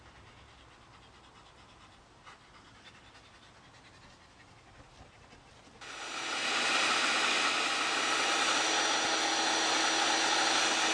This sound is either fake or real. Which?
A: real